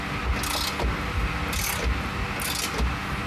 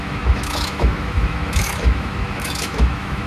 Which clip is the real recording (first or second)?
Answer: first